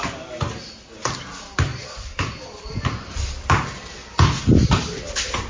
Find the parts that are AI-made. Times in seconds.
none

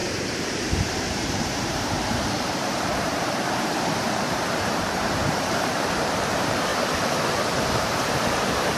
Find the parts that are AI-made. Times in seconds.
0.0-6.7 (vocoder, BigVGAN v2); 7.4-8.8

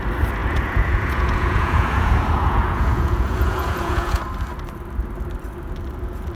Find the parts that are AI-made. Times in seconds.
0.4-4.2 (vocoder, Vocos)

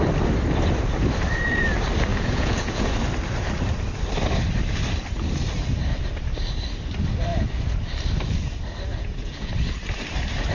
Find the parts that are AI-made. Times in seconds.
2.1-2.9 (vocoder, Vocos); 8.9-9.5

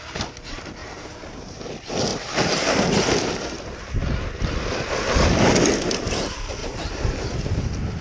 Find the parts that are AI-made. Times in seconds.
0.8-1.6 (vocoder, BigVGAN v2); 6.6-7.6

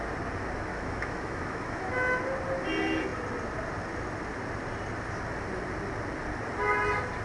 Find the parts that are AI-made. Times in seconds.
0.7-1.9 (autoencoder, DAC-VAE)

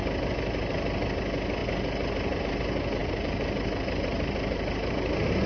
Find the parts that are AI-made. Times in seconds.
3.0-4.9 (vocoder, BigVGAN v2)